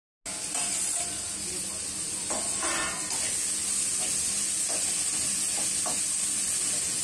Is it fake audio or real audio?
real